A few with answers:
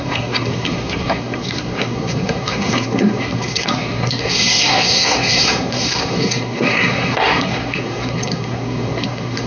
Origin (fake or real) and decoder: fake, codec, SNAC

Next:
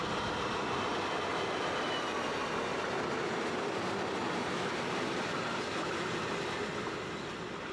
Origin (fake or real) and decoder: real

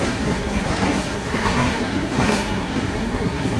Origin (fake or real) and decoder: fake, codec, SNAC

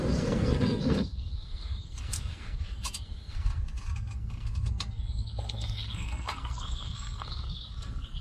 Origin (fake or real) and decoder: fake, codec, SNAC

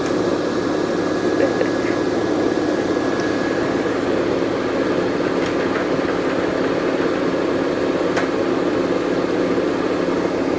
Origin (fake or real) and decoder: real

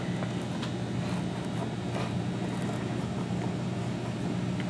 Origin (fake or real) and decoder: real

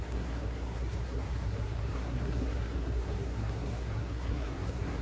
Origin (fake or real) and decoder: fake, codec, SNAC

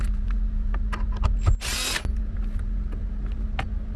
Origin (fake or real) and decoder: real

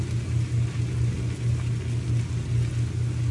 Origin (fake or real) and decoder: real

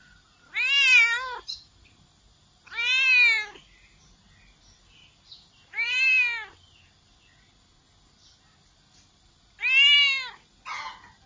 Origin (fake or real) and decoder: real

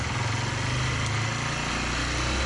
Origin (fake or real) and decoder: real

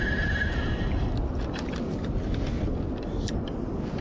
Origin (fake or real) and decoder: real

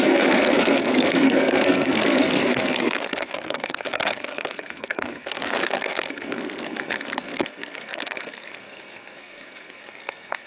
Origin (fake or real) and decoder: fake, codec, SNAC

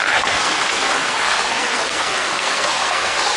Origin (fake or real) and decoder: fake, codec, SNAC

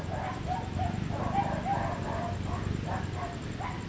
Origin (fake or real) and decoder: real